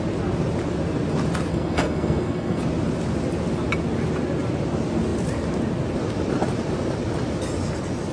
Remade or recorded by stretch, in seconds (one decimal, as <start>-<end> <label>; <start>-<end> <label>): 0.0-1.5 recorded; 1.5-2.6 remade; 2.6-8.1 recorded